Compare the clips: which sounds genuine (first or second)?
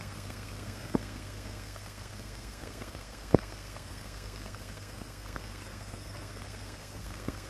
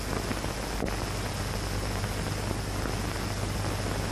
second